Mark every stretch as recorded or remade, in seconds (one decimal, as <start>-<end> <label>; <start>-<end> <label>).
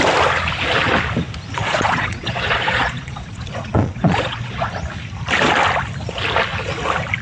0.0-1.6 recorded; 1.6-4.7 remade; 4.7-7.2 recorded